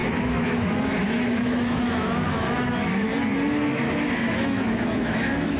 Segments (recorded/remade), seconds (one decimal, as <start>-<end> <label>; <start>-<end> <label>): 0.0-3.1 remade; 3.1-3.7 recorded; 3.7-5.6 remade